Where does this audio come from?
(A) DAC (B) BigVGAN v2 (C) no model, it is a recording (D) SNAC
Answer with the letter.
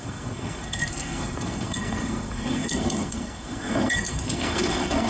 D